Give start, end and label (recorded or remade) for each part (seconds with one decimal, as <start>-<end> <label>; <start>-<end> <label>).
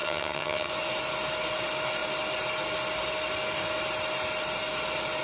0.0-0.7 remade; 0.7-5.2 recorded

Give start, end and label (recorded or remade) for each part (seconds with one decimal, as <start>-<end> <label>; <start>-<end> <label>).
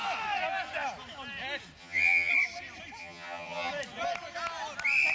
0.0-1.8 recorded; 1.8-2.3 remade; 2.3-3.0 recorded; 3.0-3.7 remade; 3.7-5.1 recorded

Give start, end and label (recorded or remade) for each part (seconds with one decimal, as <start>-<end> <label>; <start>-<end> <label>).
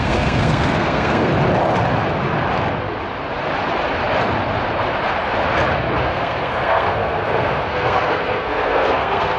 0.0-1.3 remade; 1.3-6.0 recorded; 6.0-9.4 remade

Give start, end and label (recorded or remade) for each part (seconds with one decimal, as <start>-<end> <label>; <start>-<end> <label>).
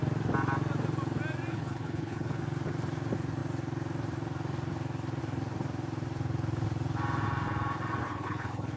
0.0-1.5 recorded; 1.5-2.4 remade; 2.4-8.0 recorded; 8.0-8.8 remade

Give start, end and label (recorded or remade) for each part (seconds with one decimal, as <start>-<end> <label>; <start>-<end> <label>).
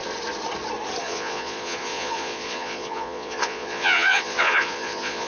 0.0-1.0 recorded; 1.0-5.3 remade